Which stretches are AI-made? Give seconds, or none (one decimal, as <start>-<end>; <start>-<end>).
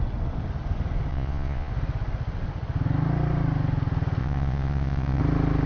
1.1-1.7; 4.2-5.2